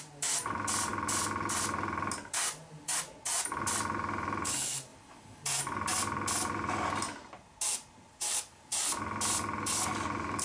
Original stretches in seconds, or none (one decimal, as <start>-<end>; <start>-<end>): 0.0-10.4